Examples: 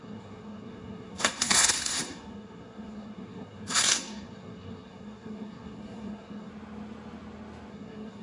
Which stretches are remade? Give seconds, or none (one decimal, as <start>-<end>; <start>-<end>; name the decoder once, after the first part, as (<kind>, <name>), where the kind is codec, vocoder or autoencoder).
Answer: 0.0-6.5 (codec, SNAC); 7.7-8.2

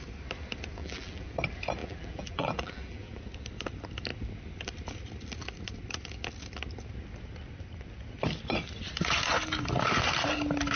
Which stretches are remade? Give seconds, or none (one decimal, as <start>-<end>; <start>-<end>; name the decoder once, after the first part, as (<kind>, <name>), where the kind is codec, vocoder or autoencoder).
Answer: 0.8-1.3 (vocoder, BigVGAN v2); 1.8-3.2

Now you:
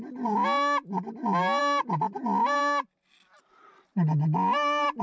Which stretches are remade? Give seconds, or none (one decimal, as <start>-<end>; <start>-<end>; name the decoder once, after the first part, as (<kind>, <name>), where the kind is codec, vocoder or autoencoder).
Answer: none

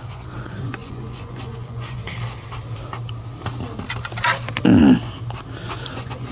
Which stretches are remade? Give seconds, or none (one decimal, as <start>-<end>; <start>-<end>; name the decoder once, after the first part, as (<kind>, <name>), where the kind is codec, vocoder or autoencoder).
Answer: 0.0-2.0 (vocoder, Vocos); 5.8-6.3

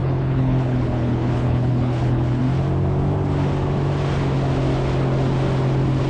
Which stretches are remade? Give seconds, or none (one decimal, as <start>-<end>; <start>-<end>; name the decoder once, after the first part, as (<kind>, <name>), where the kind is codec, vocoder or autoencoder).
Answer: 0.0-2.4 (codec, HILCodec)

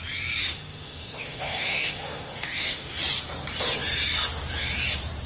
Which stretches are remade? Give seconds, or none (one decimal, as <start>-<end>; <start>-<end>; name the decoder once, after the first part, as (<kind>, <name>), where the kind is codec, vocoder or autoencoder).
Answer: 0.4-3.0 (autoencoder, DAC-VAE)

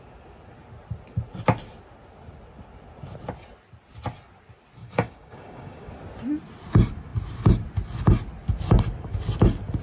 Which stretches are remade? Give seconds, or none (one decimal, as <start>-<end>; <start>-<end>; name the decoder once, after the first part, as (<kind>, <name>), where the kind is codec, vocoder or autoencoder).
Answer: 4.8-5.9 (codec, DAC)

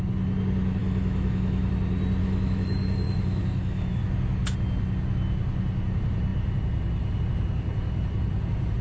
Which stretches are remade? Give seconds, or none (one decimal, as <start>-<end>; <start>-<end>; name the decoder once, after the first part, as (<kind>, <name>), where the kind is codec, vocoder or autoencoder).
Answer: 0.8-1.7 (autoencoder, DAC-VAE); 2.2-4.0